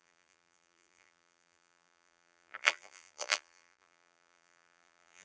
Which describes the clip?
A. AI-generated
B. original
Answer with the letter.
A